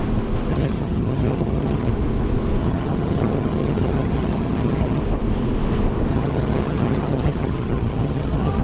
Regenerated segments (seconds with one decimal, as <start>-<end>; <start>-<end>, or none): 0.5-1.9; 2.6-5.0; 6.1-8.6